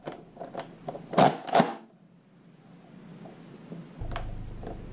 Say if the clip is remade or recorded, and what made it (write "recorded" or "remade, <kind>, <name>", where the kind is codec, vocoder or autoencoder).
recorded